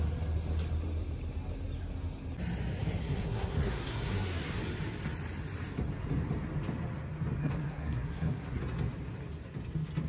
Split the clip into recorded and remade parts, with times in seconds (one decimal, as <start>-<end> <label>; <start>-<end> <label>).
0.0-3.0 recorded; 3.0-4.6 remade; 4.6-7.4 recorded; 7.4-8.6 remade; 8.6-10.1 recorded